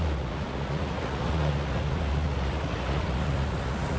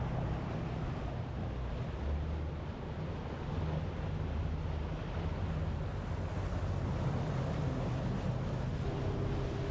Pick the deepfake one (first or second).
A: first